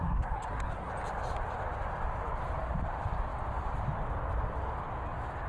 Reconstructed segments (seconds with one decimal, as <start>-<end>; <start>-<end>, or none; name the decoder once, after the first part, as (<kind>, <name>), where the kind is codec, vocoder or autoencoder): 0.0-0.9 (codec, SNAC)